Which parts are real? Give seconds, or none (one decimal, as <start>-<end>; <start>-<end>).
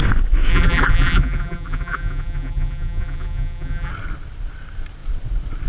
0.0-0.5; 3.9-5.7